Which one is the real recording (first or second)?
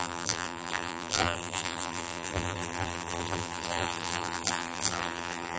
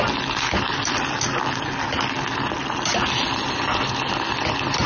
second